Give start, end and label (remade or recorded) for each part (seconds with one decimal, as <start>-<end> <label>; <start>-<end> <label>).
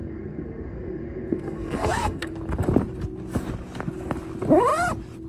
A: 0.0-2.3 remade; 2.3-5.3 recorded